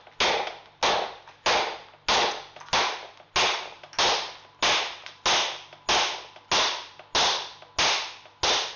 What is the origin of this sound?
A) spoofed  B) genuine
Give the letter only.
B